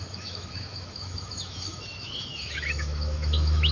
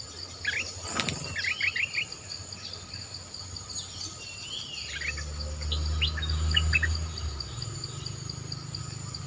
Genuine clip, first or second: second